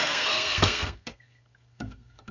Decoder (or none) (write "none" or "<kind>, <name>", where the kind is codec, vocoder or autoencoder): codec, SNAC